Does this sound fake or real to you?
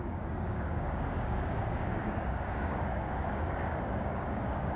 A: fake